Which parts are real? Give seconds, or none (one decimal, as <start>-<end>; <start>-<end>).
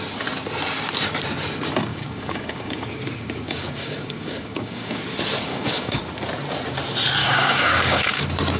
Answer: 0.0-1.9; 5.0-5.5; 6.0-7.2; 8.2-8.6